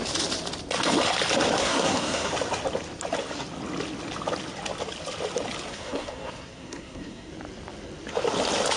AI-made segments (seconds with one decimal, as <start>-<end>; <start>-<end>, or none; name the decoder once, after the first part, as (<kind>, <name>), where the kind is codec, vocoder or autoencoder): 1.6-2.3 (codec, SNAC); 5.7-7.3